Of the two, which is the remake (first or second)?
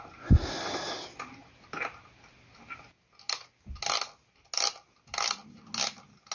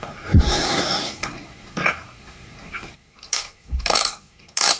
second